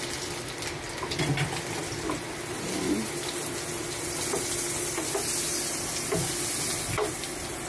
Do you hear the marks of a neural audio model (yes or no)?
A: no